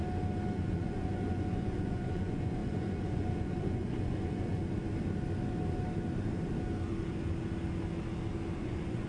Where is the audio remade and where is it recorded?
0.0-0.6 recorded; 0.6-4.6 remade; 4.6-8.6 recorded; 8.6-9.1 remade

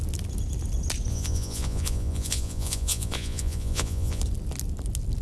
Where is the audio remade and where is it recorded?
0.0-1.1 recorded; 1.1-4.2 remade; 4.2-5.2 recorded

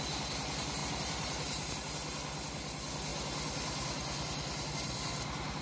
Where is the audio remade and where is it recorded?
0.0-0.8 recorded; 0.8-1.7 remade; 1.7-5.6 recorded

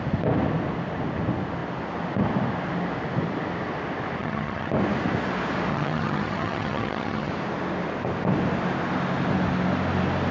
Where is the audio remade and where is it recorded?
0.0-4.2 recorded; 4.2-4.7 remade; 4.7-5.7 recorded; 5.7-7.3 remade; 7.3-10.3 recorded

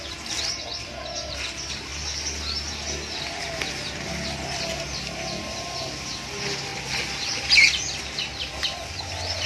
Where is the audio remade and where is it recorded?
0.0-9.5 recorded